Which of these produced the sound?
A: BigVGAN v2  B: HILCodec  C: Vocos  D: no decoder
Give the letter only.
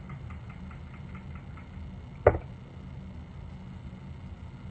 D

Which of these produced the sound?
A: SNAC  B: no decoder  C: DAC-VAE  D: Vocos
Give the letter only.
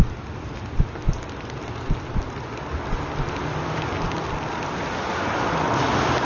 B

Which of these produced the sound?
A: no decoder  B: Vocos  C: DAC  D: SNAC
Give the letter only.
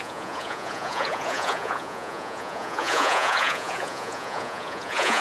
B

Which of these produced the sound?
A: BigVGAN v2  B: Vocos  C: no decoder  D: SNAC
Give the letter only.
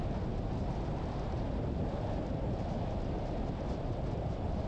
C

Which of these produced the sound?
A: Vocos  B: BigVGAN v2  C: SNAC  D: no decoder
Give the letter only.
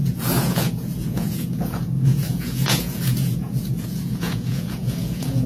A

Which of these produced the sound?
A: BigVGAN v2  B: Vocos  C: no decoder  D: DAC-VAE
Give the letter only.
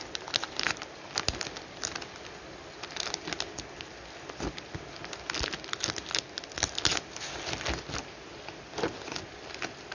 C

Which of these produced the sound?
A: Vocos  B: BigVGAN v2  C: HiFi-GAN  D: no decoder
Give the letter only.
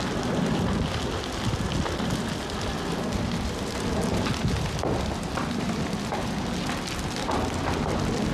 D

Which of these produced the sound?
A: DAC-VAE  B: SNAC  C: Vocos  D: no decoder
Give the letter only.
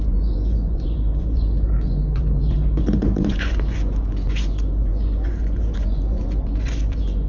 C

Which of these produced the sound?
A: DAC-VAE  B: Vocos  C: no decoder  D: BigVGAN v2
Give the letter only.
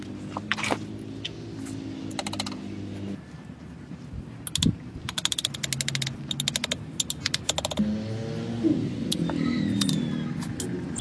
C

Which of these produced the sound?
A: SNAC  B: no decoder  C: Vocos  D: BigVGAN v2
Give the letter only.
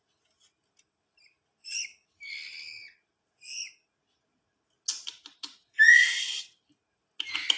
B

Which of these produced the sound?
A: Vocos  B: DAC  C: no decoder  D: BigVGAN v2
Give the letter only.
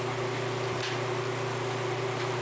C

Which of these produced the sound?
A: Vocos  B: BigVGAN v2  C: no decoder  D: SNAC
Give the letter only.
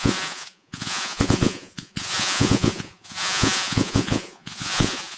A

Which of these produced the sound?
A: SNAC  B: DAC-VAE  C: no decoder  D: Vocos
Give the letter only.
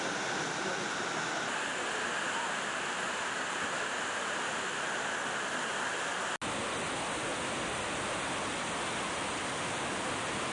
C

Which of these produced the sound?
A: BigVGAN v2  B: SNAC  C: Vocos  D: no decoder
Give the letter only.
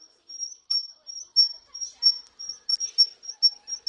D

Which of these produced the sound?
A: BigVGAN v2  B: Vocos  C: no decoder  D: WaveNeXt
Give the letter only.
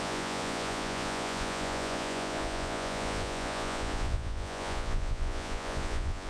B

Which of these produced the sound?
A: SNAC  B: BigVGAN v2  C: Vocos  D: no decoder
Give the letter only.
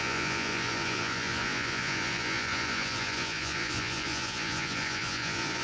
C